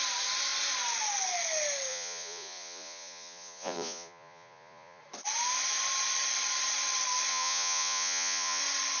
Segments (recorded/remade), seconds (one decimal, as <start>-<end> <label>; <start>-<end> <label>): 0.0-1.9 recorded; 1.9-5.0 remade; 5.0-7.3 recorded; 7.3-8.6 remade; 8.6-9.0 recorded